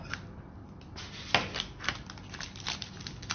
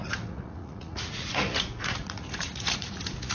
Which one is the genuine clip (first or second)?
first